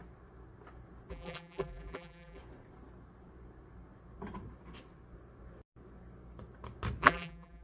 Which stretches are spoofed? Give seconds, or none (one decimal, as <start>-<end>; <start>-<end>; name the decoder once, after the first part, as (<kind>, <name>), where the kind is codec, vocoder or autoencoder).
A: 1.1-2.4 (vocoder, BigVGAN v2); 7.0-7.6